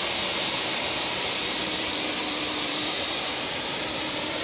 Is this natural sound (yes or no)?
no